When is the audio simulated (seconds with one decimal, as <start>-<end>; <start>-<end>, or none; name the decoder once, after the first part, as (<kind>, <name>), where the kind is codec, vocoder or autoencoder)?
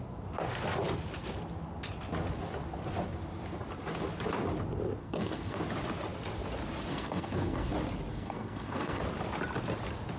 5.0-5.6 (codec, SNAC); 6.9-7.7; 8.1-9.0